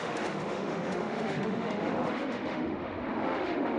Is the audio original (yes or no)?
no